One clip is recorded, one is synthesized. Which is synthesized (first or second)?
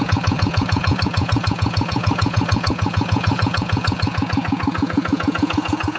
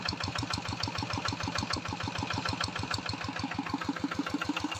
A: first